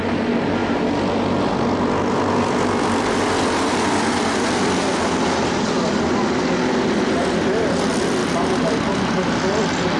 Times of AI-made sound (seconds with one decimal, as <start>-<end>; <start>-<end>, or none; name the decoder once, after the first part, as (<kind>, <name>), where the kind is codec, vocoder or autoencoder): none